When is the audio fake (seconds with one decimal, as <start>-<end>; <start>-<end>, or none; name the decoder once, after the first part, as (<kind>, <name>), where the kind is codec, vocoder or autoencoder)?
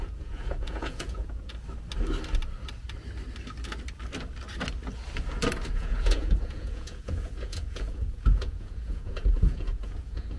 0.0-1.5 (vocoder, Vocos); 5.7-10.4